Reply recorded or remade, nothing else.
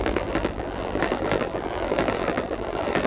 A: remade